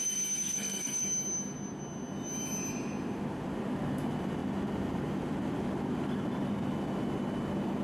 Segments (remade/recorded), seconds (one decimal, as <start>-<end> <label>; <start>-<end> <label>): 0.0-0.4 recorded; 0.4-1.0 remade; 1.0-7.8 recorded